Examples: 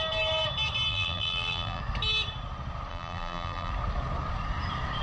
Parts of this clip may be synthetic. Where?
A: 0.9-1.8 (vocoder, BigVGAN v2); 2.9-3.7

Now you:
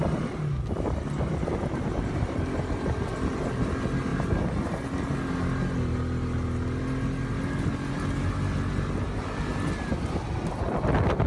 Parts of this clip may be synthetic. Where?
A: none

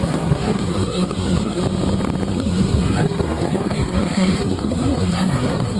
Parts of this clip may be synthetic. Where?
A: 0.0-1.6 (codec, SNAC); 2.3-5.8

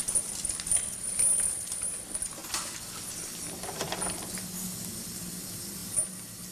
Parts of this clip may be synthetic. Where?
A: none

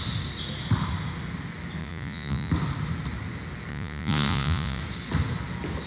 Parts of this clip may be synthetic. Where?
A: 1.8-2.5 (vocoder, Vocos); 3.7-4.8